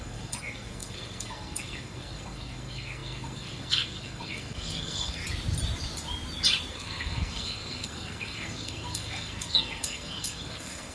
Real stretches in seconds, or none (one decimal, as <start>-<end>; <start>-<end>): 5.2-6.7